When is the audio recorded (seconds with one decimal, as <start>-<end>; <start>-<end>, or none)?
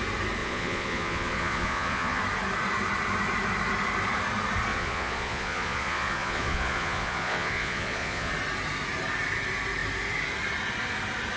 0.0-0.4; 2.2-4.7; 8.3-11.4